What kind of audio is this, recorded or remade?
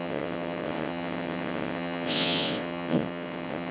remade